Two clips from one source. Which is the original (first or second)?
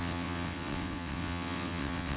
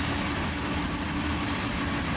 second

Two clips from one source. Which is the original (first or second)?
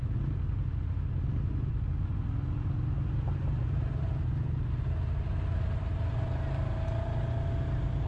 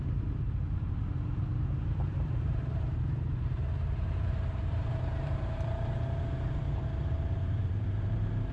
first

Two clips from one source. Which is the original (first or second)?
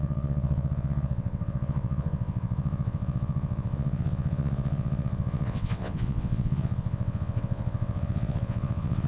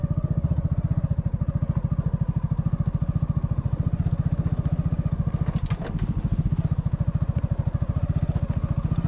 second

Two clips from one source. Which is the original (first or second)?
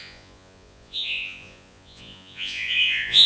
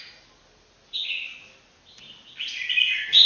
second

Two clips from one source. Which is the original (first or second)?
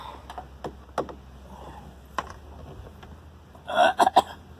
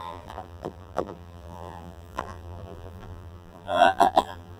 first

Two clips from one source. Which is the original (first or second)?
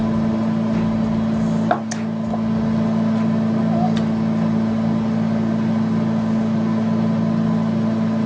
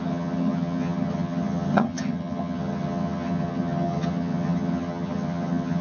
first